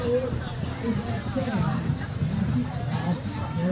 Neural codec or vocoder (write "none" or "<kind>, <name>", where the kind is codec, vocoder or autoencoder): vocoder, BigVGAN v2